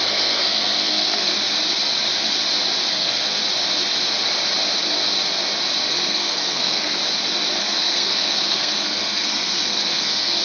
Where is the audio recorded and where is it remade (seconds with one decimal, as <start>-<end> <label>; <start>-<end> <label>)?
0.0-1.3 remade; 1.3-2.9 recorded; 2.9-3.4 remade; 3.4-5.9 recorded; 5.9-7.0 remade; 7.0-7.6 recorded; 7.6-10.4 remade